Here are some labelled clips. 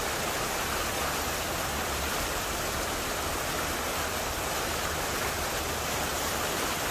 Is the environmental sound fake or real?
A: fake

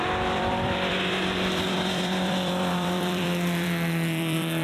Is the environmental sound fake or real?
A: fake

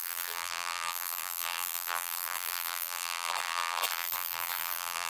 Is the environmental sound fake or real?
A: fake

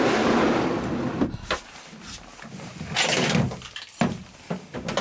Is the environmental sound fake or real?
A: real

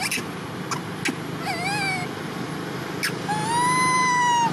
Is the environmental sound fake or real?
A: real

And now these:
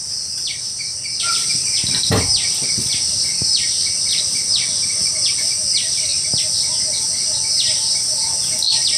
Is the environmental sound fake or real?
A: real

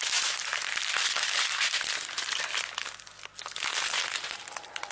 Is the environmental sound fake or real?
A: real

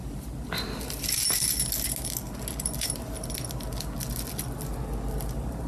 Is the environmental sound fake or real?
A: real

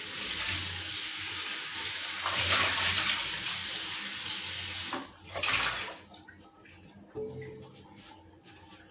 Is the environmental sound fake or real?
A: real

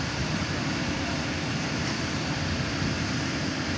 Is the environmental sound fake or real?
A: fake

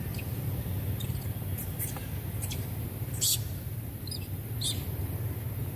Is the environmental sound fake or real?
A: real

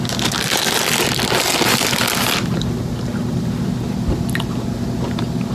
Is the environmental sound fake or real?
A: real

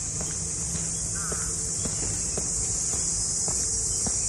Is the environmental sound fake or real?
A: real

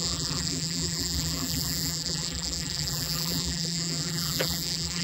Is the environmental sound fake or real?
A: fake